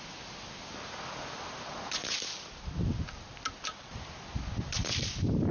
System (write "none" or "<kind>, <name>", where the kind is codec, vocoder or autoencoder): none